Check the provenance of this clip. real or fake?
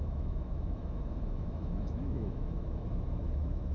fake